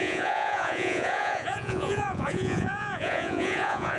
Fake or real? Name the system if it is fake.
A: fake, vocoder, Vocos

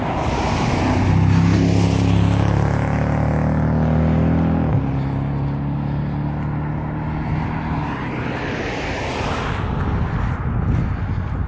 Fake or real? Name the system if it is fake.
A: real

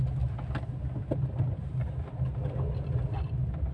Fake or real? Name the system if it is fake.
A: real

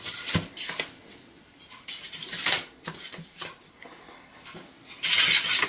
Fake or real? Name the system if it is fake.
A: real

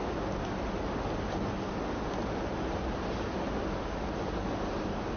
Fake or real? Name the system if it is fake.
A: real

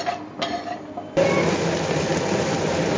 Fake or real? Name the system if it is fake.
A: real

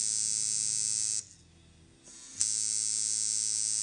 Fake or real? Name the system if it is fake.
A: real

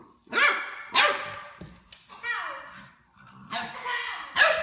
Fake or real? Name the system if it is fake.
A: real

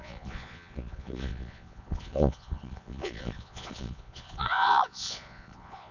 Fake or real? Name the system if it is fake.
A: fake, vocoder, Vocos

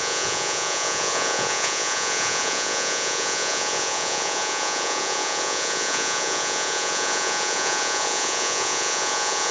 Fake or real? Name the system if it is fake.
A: fake, vocoder, Vocos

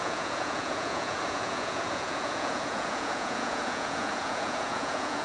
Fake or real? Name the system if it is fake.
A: fake, vocoder, Vocos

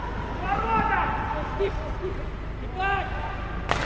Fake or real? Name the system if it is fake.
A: real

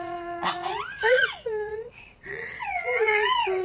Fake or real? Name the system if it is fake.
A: fake, vocoder, Vocos